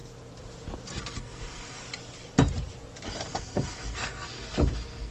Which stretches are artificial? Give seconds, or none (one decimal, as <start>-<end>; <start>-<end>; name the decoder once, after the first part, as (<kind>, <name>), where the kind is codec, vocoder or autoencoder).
1.0-1.8 (codec, SNAC); 3.3-5.1